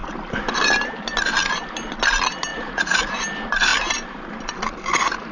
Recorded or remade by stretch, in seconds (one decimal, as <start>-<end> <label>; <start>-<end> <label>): 0.0-2.5 recorded; 2.5-3.0 remade; 3.0-5.3 recorded